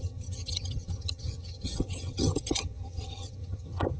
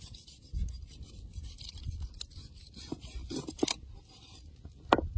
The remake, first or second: first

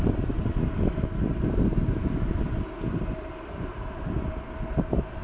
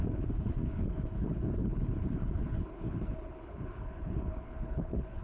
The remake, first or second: second